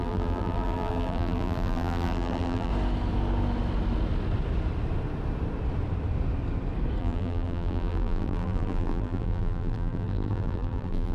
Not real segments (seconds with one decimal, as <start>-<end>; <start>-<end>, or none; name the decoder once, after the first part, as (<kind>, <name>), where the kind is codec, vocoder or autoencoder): 0.0-2.7 (vocoder, BigVGAN v2); 7.0-11.1